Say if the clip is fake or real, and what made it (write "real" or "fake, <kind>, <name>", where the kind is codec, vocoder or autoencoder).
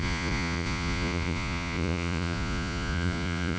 fake, vocoder, Vocos